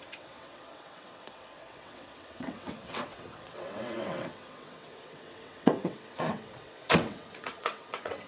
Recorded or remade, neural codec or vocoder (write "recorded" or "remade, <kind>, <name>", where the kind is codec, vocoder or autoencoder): remade, vocoder, WaveNeXt